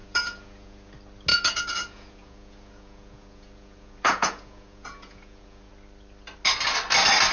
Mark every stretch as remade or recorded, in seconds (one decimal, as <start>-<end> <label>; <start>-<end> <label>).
0.0-0.9 remade; 0.9-1.3 recorded; 1.3-5.7 remade; 5.7-7.3 recorded